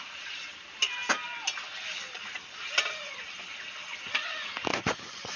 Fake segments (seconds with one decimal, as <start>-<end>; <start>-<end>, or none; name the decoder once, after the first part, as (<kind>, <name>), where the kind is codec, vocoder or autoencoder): 4.7-5.4 (vocoder, Vocos)